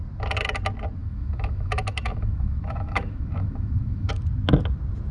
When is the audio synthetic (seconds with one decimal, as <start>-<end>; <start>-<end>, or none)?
1.0-4.1